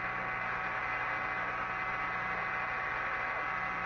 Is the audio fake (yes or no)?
no